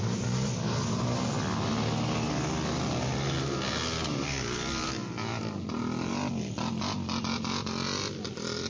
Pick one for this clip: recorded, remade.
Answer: recorded